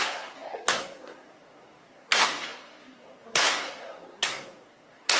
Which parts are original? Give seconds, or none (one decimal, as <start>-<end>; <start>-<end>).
none

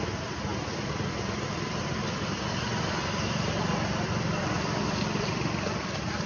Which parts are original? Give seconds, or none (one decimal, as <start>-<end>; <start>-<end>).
0.0-6.3